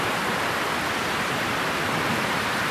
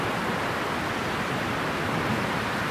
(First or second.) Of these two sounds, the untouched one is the second